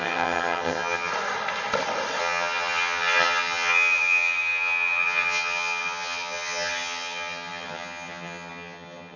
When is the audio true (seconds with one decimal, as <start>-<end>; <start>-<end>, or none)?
1.1-2.2

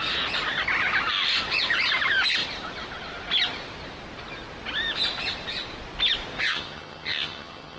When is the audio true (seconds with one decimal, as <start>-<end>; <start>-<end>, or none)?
0.0-6.5